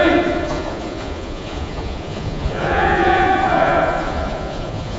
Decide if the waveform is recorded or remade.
remade